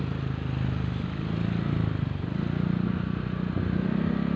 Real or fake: real